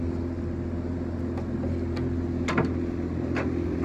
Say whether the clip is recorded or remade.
recorded